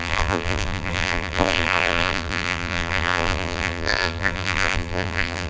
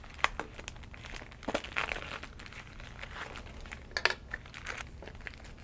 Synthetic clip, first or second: first